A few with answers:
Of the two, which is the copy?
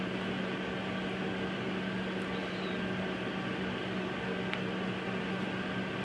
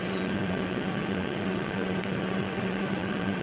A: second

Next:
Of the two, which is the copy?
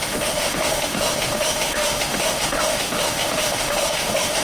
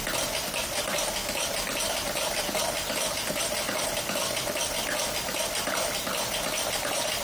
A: first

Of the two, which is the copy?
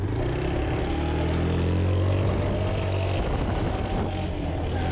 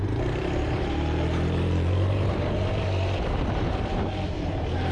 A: second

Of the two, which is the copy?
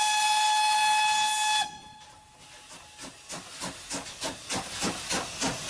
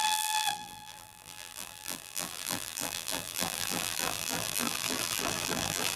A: second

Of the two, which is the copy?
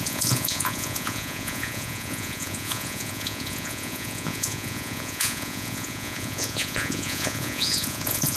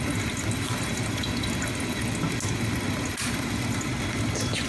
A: first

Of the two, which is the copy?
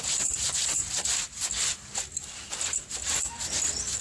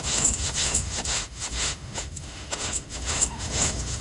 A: second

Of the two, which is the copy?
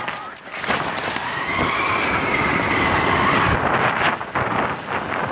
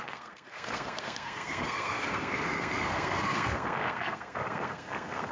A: second